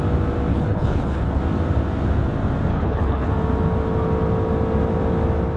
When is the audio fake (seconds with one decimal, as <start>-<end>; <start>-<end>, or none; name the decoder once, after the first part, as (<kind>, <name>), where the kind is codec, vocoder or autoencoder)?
0.5-1.4 (codec, HILCodec); 2.7-3.3